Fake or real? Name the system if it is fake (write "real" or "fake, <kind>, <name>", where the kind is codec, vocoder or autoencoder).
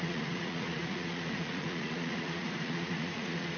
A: fake, vocoder, Vocos